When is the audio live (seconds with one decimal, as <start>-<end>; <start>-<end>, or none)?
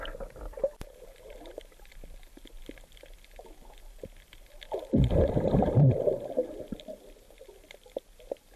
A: 2.4-5.3